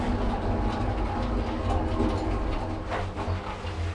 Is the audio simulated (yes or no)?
no